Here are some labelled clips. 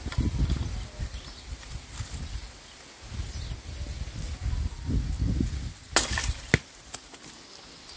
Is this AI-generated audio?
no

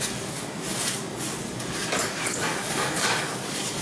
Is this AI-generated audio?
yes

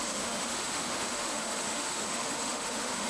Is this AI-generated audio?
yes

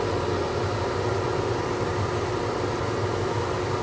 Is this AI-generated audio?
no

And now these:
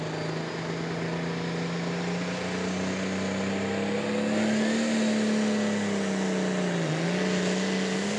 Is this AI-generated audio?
no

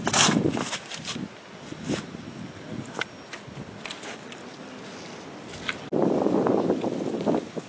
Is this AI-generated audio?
no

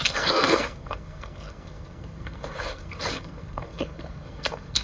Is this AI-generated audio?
yes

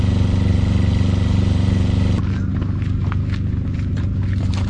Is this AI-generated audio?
no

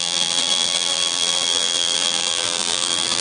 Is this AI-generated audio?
yes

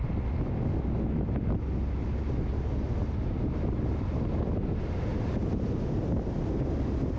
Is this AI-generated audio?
no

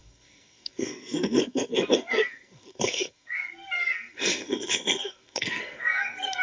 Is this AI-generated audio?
yes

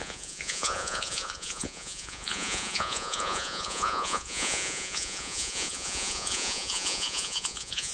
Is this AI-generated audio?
yes